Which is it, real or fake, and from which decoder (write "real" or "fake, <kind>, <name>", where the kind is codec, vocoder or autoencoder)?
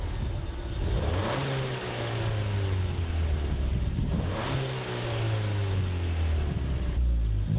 real